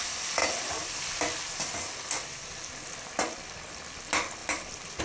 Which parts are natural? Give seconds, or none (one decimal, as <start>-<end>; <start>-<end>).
0.0-5.0